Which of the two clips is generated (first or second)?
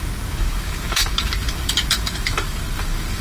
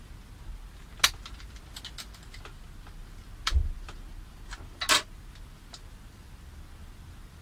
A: first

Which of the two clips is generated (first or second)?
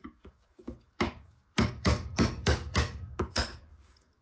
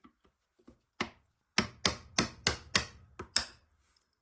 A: first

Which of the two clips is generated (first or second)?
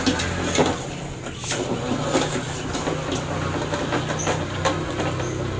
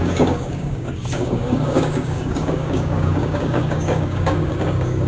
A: second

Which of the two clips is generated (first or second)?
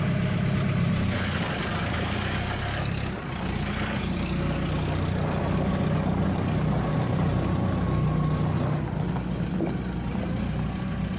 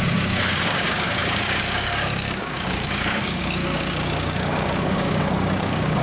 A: second